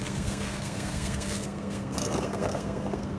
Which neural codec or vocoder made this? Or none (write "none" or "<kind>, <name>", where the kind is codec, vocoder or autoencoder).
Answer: codec, SNAC